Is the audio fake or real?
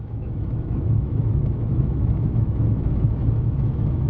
fake